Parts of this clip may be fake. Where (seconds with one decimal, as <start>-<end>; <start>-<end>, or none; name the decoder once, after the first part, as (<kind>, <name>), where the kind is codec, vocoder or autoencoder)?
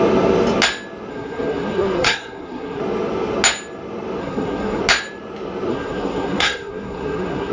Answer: 1.1-2.8 (codec, SNAC); 4.2-4.8; 5.7-7.5